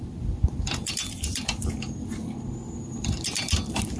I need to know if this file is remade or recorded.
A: remade